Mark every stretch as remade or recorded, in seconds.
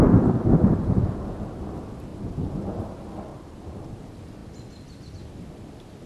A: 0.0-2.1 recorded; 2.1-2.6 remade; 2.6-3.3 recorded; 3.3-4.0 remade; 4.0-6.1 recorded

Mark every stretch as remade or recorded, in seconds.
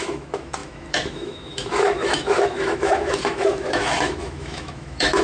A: 0.0-5.2 remade